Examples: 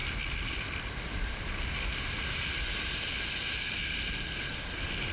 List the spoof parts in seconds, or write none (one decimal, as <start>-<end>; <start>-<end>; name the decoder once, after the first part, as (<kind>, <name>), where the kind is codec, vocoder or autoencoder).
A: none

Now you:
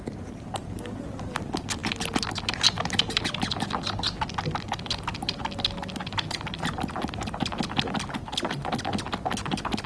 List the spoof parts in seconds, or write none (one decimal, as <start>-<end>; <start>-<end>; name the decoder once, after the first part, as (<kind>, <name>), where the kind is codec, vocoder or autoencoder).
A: none

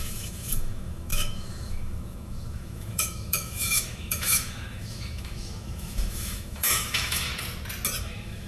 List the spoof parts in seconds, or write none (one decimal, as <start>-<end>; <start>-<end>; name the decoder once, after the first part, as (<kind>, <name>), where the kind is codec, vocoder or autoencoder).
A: 0.0-7.3 (autoencoder, DAC-VAE); 8.0-8.5

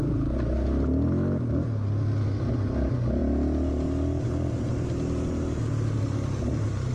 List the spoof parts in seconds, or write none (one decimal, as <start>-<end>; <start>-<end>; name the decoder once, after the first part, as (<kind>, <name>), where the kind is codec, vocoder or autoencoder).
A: none